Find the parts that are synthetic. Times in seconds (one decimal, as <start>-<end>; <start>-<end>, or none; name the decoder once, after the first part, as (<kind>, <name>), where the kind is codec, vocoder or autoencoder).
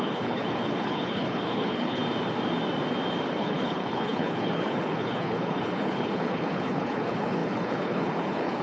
0.0-2.0 (codec, HILCodec); 3.3-8.6